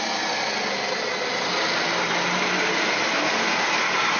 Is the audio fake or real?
real